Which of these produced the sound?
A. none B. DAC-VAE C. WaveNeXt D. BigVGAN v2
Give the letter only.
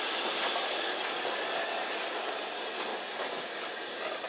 A